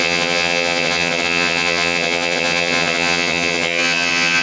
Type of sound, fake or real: fake